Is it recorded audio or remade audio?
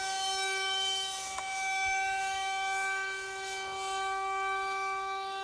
remade